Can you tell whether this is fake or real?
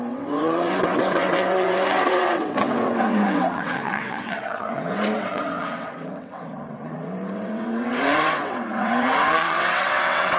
fake